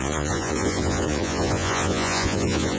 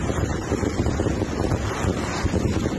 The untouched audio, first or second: second